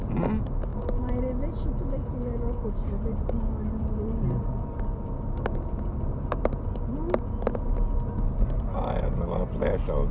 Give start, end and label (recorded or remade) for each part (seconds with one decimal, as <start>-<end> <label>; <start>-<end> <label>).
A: 0.0-10.1 recorded